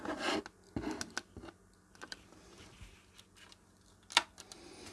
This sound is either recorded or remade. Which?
recorded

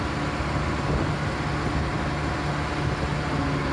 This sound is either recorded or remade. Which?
recorded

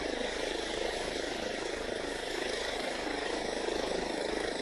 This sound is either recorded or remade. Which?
remade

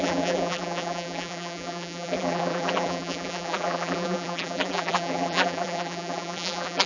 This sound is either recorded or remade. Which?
remade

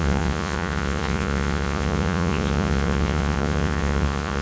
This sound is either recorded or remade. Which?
remade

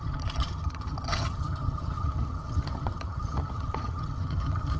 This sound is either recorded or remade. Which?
remade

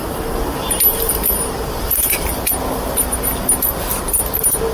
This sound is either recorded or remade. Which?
recorded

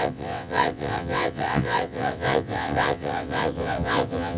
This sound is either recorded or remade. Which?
remade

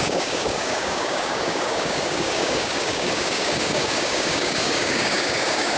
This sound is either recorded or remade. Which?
remade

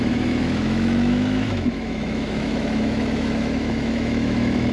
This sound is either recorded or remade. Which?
remade